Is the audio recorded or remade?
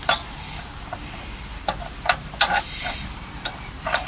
recorded